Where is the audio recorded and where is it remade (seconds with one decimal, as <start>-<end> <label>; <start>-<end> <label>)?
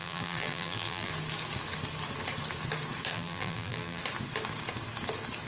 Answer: 0.0-1.1 remade; 1.1-3.1 recorded; 3.1-4.0 remade; 4.0-5.5 recorded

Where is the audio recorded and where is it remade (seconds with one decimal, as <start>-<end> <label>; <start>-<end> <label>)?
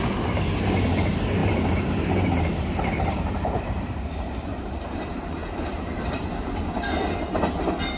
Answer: 0.0-1.4 recorded; 1.4-5.3 remade; 5.3-5.7 recorded; 5.7-6.6 remade; 6.6-8.0 recorded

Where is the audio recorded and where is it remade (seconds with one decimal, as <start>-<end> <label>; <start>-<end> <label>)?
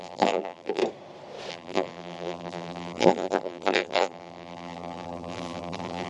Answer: 0.0-0.8 remade; 0.8-1.5 recorded; 1.5-6.1 remade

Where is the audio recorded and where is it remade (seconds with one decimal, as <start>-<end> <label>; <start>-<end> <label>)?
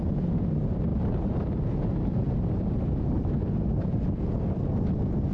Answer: 0.0-0.9 recorded; 0.9-2.7 remade; 2.7-5.3 recorded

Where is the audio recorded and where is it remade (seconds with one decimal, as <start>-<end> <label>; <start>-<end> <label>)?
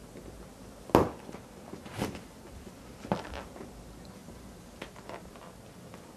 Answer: 0.0-4.2 recorded; 4.2-4.9 remade; 4.9-6.2 recorded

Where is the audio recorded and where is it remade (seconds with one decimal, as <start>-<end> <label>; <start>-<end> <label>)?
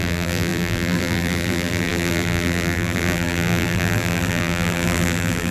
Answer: 0.0-5.5 remade